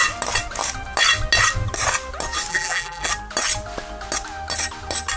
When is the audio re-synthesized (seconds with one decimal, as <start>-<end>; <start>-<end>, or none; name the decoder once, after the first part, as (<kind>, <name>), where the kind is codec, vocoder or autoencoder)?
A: 2.5-3.1 (vocoder, BigVGAN v2)